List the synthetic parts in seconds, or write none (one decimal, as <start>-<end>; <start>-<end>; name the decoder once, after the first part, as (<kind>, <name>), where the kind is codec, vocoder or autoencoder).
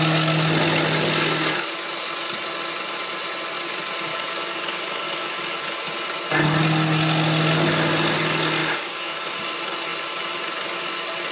4.1-5.9 (codec, DAC); 8.6-9.4